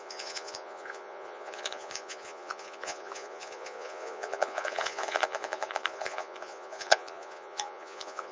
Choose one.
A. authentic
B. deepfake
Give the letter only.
B